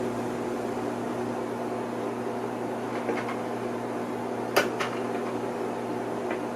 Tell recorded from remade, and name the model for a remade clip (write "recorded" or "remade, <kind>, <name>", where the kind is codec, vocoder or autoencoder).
recorded